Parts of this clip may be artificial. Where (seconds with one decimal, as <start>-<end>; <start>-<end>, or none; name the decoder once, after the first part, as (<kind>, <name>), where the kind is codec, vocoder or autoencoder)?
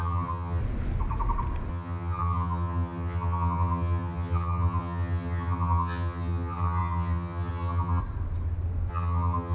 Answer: 0.0-0.6 (vocoder, HiFi-GAN); 1.7-8.0; 8.9-9.5